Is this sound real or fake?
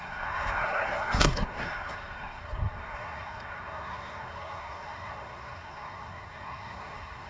fake